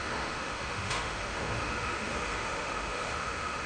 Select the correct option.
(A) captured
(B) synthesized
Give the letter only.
B